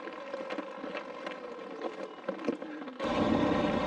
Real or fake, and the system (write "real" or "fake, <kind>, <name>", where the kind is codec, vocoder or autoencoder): real